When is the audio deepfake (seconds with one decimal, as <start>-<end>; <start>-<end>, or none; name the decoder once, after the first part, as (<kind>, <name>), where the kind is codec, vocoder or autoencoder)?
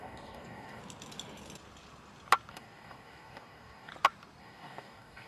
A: 0.0-0.8 (codec, DAC); 2.5-3.9; 4.4-5.3